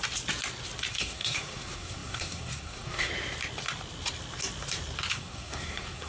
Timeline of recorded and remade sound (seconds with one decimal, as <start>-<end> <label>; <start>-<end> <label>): 0.0-0.9 recorded; 0.9-3.1 remade; 3.1-5.1 recorded; 5.1-6.1 remade